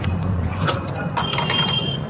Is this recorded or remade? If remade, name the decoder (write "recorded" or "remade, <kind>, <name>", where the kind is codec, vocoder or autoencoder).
remade, vocoder, Vocos